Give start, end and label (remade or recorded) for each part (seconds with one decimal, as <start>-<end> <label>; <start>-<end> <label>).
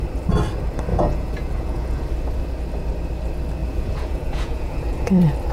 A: 0.0-0.9 recorded; 0.9-2.0 remade; 2.0-3.6 recorded; 3.6-5.1 remade; 5.1-5.5 recorded